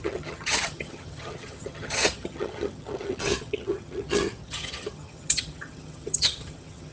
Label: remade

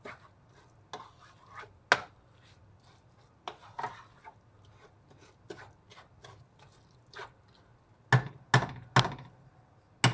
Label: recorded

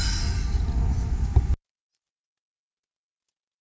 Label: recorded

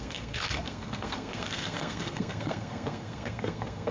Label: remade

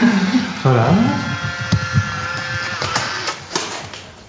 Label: recorded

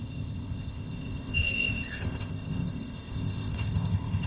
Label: remade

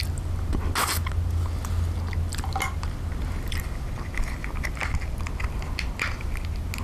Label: recorded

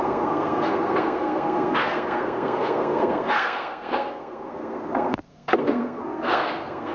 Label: remade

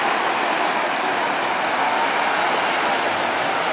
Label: recorded